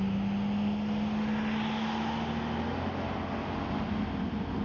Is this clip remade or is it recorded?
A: recorded